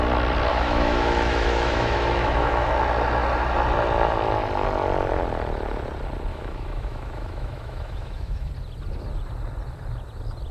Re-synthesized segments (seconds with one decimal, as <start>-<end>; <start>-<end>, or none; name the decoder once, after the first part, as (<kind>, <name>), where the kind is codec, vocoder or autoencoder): 0.5-2.7 (autoencoder, DAC-VAE); 6.3-8.5